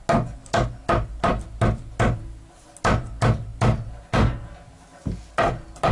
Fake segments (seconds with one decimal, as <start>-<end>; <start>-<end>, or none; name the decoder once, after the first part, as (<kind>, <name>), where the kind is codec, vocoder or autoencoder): none